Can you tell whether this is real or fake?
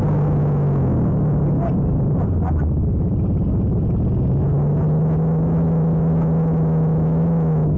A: real